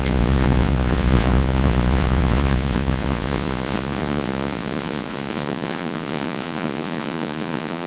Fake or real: fake